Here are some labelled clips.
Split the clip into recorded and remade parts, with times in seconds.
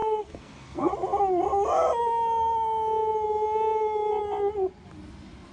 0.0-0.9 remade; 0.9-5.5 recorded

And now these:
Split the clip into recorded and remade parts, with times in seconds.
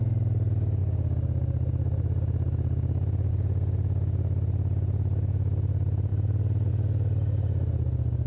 0.0-8.3 recorded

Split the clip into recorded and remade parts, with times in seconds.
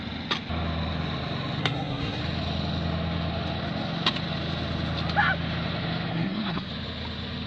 0.0-1.6 recorded; 1.6-2.2 remade; 2.2-6.1 recorded; 6.1-6.7 remade; 6.7-7.5 recorded